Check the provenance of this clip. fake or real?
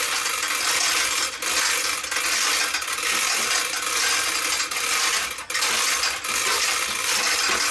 real